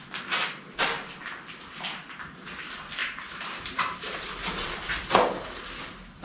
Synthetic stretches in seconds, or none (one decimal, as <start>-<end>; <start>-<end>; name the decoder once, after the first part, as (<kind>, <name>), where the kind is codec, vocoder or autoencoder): 3.0-4.3 (vocoder, BigVGAN v2)